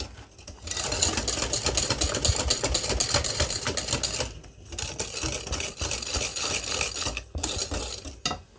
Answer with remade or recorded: recorded